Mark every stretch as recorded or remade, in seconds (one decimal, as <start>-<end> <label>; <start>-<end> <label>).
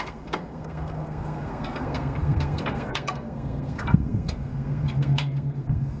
0.0-6.0 remade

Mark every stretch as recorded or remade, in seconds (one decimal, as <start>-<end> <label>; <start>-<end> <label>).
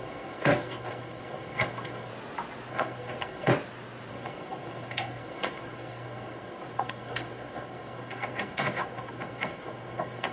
0.0-2.1 remade; 2.1-2.7 recorded; 2.7-3.5 remade; 3.5-4.1 recorded; 4.1-10.3 remade